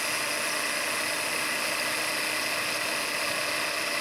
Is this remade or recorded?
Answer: recorded